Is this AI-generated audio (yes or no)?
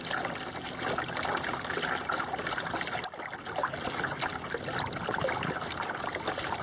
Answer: no